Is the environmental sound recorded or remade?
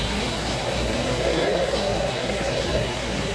remade